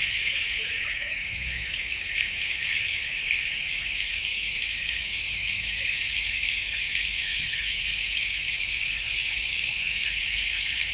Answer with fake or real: fake